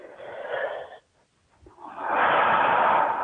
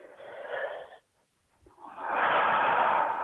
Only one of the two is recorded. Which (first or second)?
first